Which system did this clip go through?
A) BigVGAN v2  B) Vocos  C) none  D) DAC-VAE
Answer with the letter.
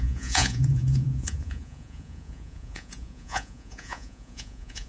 B